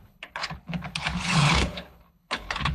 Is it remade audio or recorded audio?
remade